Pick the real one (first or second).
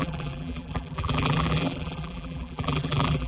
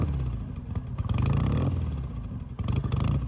second